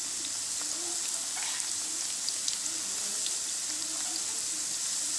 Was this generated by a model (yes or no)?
no